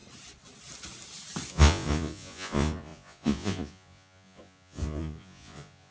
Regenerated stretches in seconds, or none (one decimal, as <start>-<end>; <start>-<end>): 1.5-5.9